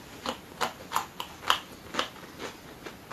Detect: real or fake real